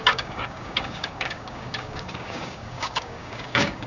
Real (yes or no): no